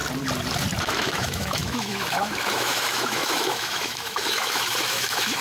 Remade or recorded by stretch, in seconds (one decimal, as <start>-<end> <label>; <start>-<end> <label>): 0.0-0.8 recorded; 0.8-5.4 remade